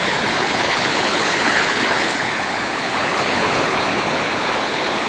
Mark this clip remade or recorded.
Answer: remade